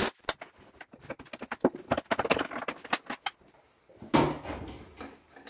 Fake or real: real